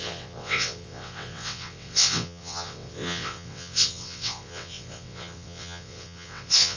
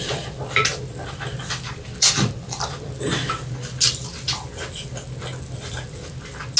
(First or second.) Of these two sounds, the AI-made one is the first